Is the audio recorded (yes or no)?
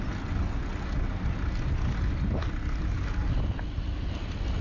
yes